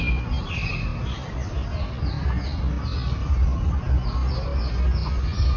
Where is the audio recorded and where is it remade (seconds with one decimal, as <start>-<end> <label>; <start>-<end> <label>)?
0.0-5.6 recorded